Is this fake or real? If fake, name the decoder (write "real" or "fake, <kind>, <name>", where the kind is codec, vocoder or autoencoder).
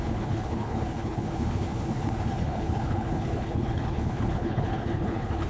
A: fake, codec, HILCodec